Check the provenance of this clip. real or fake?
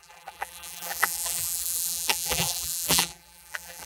fake